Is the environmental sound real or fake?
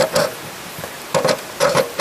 fake